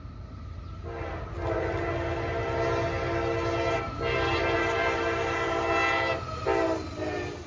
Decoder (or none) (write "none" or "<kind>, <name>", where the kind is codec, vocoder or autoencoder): none